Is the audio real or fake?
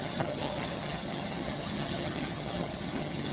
fake